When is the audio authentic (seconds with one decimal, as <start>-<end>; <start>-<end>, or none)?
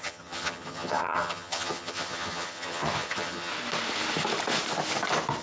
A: 3.5-5.4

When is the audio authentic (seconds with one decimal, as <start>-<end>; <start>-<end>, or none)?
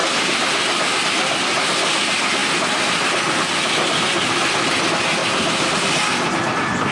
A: 0.0-6.9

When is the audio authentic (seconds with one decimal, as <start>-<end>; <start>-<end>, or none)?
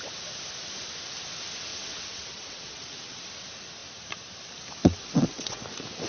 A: 0.0-1.7; 3.2-4.8; 5.6-6.1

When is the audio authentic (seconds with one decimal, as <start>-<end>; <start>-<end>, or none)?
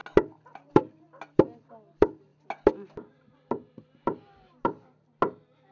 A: 0.0-5.7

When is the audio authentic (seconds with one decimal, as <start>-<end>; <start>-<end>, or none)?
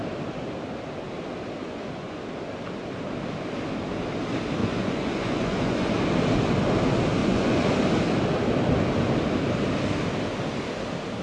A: 0.0-1.6; 2.2-4.6; 5.9-7.2; 7.7-11.2